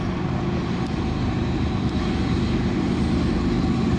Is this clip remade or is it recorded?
recorded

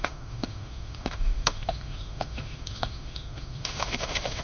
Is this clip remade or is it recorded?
remade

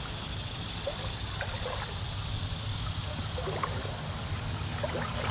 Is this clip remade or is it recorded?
recorded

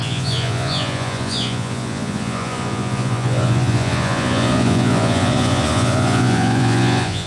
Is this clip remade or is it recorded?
remade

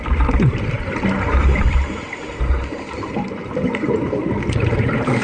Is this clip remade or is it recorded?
remade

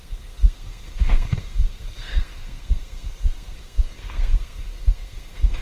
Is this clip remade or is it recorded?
remade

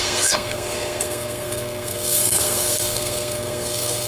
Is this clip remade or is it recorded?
remade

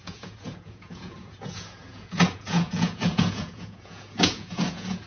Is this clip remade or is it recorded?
remade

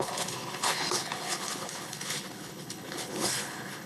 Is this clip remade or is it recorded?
remade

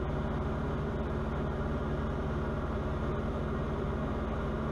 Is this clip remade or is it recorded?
recorded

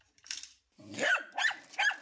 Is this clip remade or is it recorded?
remade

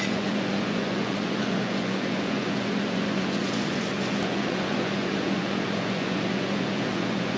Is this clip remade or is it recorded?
remade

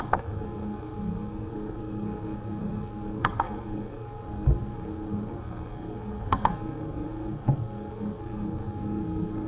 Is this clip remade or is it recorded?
remade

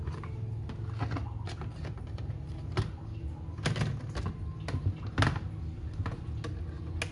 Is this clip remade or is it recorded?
recorded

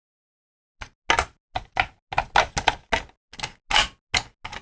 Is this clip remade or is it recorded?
recorded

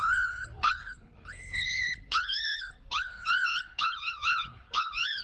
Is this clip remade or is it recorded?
remade